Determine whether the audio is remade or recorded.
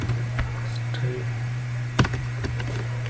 remade